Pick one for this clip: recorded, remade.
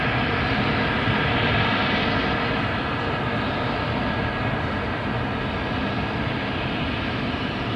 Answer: recorded